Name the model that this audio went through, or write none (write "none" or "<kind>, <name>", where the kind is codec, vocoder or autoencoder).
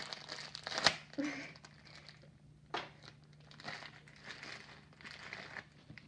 none